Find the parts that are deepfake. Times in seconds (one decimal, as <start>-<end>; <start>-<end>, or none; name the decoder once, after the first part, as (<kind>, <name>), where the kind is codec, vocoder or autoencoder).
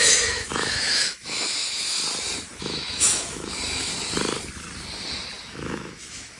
0.0-2.0 (autoencoder, DAC-VAE); 2.6-3.9; 5.4-6.4